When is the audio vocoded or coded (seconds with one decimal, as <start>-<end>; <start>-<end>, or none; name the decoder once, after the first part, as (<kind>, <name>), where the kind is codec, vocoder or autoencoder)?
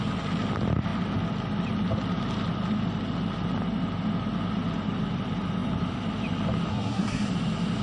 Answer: 6.7-7.3 (codec, SNAC)